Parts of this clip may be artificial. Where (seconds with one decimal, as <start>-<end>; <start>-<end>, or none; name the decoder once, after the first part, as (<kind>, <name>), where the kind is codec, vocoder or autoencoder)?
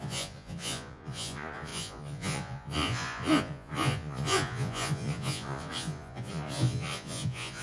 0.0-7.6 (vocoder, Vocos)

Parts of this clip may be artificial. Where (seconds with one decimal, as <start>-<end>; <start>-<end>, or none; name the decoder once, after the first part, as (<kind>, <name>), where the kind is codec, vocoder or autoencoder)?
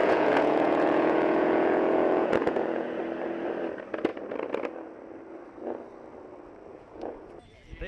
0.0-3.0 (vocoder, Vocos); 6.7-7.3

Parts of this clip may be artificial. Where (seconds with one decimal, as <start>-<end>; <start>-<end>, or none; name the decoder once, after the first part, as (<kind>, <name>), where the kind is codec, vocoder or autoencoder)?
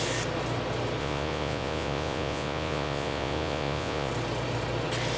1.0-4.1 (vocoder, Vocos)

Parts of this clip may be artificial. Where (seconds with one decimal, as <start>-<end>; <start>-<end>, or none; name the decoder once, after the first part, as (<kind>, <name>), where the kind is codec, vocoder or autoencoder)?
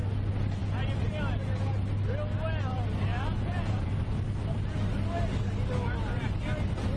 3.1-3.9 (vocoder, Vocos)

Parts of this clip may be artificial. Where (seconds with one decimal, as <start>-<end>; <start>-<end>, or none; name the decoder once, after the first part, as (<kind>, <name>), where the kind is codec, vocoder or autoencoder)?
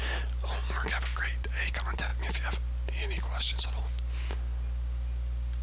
none